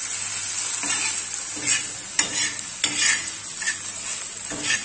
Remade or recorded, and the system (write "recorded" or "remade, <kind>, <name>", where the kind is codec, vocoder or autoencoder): recorded